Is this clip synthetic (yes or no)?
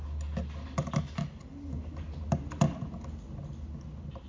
no